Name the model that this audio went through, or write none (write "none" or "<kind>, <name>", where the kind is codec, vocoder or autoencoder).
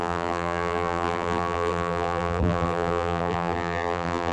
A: vocoder, BigVGAN v2